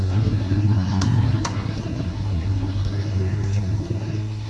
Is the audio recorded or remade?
remade